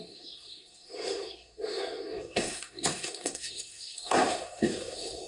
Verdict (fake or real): fake